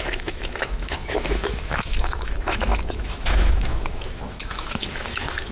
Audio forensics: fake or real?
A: fake